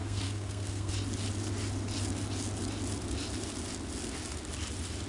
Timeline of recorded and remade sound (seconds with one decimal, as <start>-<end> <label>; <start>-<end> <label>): 0.0-0.9 remade; 0.9-5.1 recorded